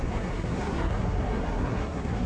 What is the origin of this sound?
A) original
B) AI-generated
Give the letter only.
B